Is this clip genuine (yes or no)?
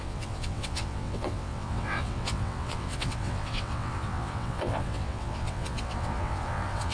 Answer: no